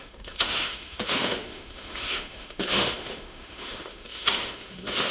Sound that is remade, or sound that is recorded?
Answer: remade